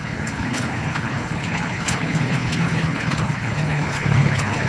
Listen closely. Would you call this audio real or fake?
fake